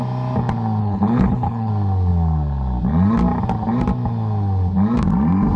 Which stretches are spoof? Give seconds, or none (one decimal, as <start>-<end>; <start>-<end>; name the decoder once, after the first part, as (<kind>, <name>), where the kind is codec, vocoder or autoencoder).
0.8-1.7 (codec, HILCodec)